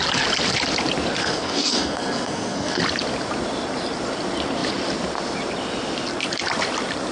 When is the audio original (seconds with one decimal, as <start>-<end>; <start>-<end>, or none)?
0.0-1.2; 2.8-7.1